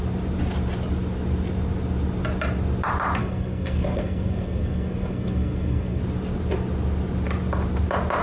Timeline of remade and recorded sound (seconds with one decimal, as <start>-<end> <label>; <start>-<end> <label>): 0.0-3.2 recorded; 3.2-6.0 remade; 6.0-8.2 recorded

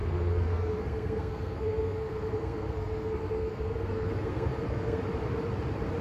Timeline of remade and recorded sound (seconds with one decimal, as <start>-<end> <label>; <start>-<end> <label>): 0.0-5.0 remade; 5.0-6.0 recorded

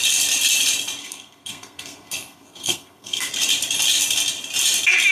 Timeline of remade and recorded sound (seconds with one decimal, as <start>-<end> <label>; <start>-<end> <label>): 0.0-1.0 recorded; 1.0-3.3 remade; 3.3-5.1 recorded

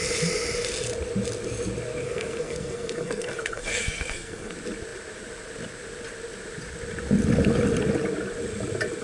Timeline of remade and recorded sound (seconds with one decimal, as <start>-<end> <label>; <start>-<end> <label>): 0.0-2.0 recorded; 2.0-4.5 remade; 4.5-9.0 recorded

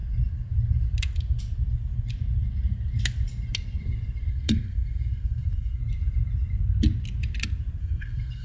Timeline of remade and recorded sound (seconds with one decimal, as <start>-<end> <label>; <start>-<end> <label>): 0.0-4.3 recorded; 4.3-5.8 remade; 5.8-7.8 recorded; 7.8-8.4 remade